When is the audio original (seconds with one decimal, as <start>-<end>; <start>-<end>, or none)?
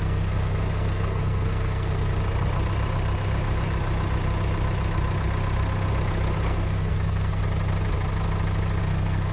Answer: 2.1-6.4; 7.4-8.8